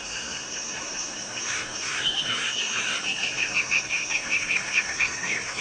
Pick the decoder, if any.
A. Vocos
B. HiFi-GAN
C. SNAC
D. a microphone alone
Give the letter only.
C